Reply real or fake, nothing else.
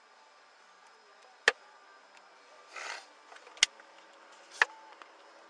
real